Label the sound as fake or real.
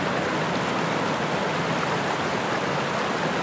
real